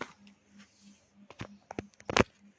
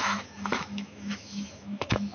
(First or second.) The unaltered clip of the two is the first